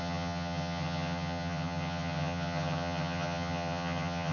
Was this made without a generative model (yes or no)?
no